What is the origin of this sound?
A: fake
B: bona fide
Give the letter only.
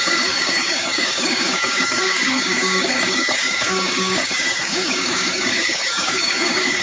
A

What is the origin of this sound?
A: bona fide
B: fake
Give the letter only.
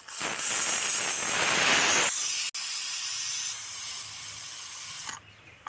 A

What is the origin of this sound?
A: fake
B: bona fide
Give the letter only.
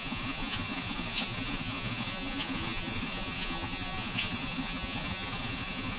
A